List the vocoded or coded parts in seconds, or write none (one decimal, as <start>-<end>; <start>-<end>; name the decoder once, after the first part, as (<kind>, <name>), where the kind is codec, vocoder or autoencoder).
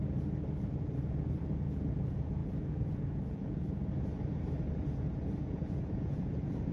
0.6-3.8 (vocoder, Vocos); 4.9-6.7